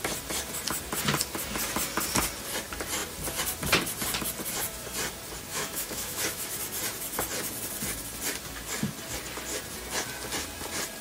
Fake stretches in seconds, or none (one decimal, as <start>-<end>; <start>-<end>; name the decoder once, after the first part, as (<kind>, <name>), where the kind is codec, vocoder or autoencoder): 5.5-6.6 (autoencoder, DAC-VAE)